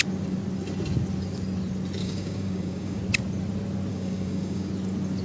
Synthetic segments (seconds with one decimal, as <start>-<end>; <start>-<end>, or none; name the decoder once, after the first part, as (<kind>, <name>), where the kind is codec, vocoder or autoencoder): 2.0-3.0 (codec, DAC); 3.9-4.7

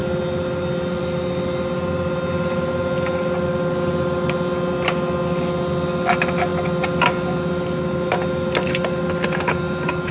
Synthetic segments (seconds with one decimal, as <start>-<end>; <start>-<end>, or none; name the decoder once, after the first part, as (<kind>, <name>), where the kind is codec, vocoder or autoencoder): none

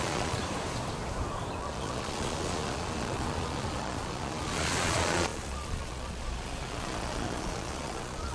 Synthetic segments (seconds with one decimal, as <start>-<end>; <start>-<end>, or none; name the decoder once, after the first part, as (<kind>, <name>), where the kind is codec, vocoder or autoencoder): 0.0-0.4 (vocoder, Vocos); 1.6-8.3